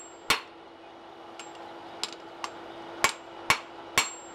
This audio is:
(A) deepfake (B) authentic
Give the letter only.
B